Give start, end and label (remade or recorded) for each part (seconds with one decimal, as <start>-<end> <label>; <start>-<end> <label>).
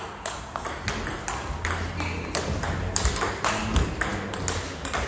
0.0-5.1 recorded